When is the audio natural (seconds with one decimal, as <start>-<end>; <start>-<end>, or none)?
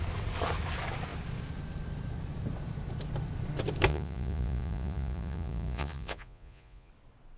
0.0-3.9; 6.9-7.4